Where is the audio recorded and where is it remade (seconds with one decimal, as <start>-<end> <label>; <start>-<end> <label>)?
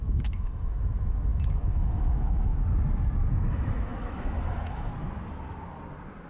0.0-2.5 remade; 2.5-3.5 recorded; 3.5-4.9 remade; 4.9-6.3 recorded